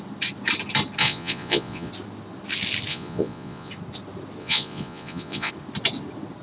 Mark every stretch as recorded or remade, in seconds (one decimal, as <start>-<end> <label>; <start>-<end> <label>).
0.0-1.0 recorded; 1.0-1.9 remade; 1.9-2.9 recorded; 2.9-3.7 remade; 3.7-4.4 recorded; 4.4-5.5 remade; 5.5-6.4 recorded